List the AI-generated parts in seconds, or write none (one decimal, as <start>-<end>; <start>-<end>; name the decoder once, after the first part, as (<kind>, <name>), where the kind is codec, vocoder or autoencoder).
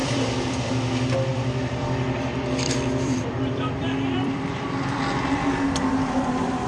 0.0-0.7 (vocoder, BigVGAN v2); 1.3-5.0